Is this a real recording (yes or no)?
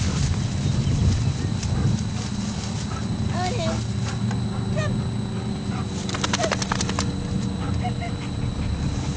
yes